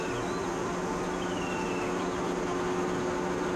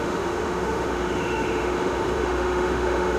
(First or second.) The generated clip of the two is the second